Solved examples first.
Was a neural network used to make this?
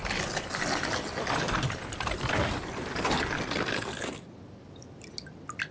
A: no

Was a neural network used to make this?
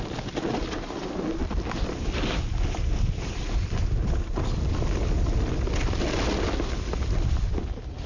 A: no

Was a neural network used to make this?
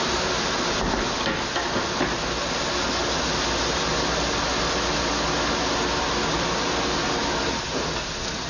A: no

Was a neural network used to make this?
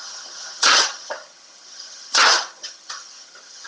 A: yes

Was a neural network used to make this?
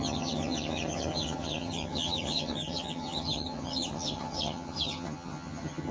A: yes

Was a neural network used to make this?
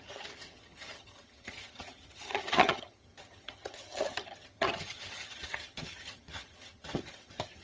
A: yes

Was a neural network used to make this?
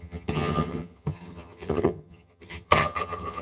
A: yes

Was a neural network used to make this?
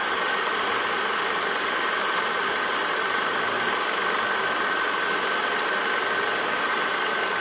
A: no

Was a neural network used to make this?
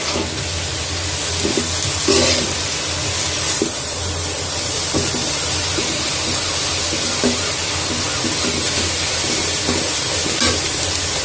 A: no